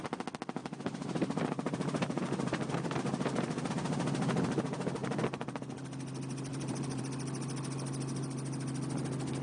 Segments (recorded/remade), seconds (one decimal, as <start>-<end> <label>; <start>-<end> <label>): 0.0-0.6 recorded; 0.6-3.7 remade; 3.7-5.0 recorded; 5.0-5.6 remade; 5.6-6.5 recorded; 6.5-7.0 remade; 7.0-9.4 recorded